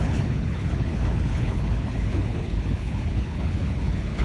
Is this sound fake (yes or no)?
yes